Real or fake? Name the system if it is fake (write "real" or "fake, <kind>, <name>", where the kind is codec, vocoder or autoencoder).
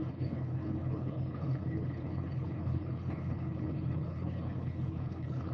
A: fake, codec, HILCodec